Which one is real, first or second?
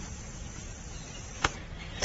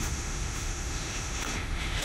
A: first